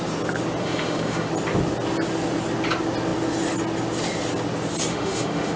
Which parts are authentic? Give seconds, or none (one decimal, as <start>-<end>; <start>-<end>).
0.0-0.6; 1.3-4.9